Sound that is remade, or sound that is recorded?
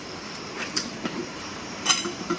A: remade